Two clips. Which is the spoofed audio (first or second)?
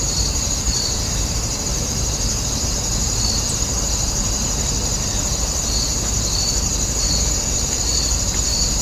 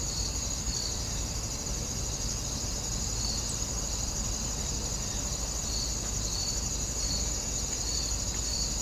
first